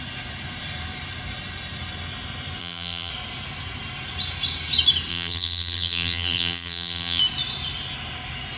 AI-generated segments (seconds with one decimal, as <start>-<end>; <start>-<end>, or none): 2.6-3.1; 5.1-7.2